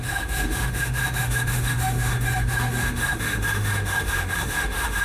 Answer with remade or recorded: remade